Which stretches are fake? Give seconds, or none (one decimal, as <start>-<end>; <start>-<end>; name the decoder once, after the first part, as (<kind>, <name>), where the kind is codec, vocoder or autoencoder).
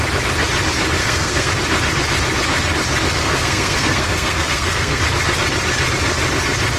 1.0-1.5 (codec, SNAC); 3.2-5.0